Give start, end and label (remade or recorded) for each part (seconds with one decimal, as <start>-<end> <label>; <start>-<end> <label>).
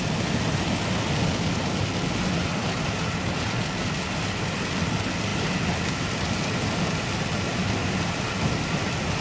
0.0-2.4 recorded; 2.4-2.9 remade; 2.9-9.2 recorded